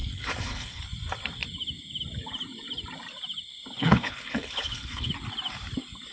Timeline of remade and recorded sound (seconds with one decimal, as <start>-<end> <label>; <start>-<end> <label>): 0.0-0.8 remade; 0.8-3.8 recorded; 3.8-5.1 remade; 5.1-6.1 recorded